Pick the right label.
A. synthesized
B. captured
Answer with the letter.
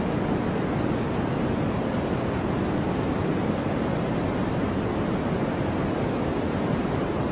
B